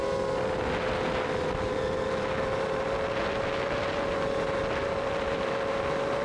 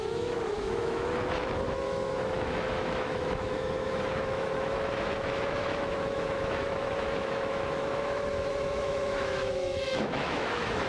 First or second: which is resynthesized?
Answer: second